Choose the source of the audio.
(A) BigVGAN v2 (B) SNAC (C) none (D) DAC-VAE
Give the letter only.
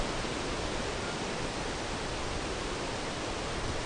C